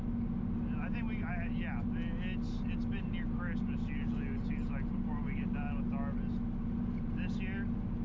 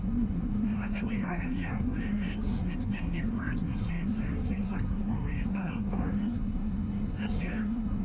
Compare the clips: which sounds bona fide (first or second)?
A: first